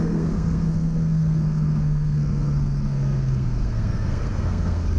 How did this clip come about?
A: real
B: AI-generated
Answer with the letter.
B